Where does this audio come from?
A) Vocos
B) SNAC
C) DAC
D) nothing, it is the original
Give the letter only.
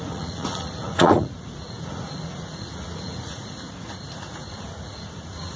A